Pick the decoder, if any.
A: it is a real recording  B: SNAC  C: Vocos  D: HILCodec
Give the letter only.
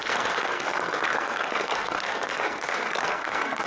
B